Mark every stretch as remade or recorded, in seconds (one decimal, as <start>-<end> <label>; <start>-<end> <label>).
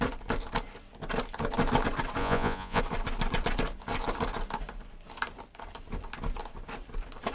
0.0-2.2 recorded; 2.2-2.8 remade; 2.8-7.3 recorded